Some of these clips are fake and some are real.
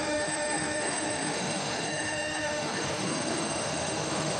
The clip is fake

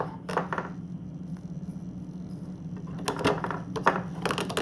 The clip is real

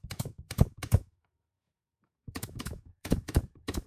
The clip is fake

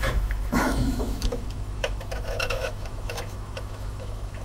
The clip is fake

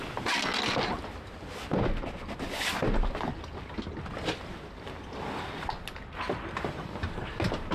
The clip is real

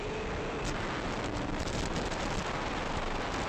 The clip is real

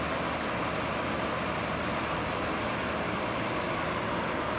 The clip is real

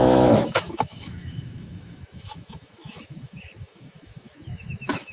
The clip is fake